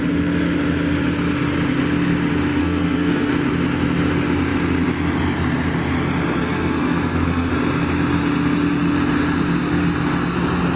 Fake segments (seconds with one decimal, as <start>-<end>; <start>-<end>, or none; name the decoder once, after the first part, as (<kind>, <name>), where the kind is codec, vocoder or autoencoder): 2.6-3.3 (codec, SNAC); 6.4-7.5